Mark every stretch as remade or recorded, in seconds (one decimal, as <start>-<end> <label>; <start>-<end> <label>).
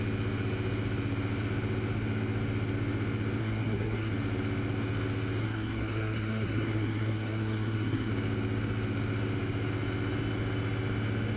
0.0-3.4 recorded; 3.4-4.1 remade; 4.1-5.4 recorded; 5.4-8.1 remade; 8.1-11.4 recorded